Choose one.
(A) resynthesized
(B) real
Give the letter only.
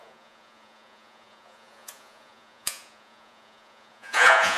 A